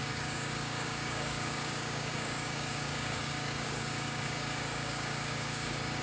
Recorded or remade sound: remade